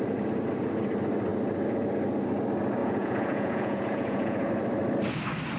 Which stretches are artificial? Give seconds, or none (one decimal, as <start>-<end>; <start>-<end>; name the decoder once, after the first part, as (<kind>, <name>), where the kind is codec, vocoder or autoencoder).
2.8-4.5 (vocoder, Vocos)